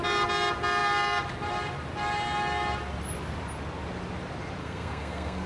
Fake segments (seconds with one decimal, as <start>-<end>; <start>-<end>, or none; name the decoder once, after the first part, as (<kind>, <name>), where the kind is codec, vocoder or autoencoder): 4.6-5.5 (codec, SNAC)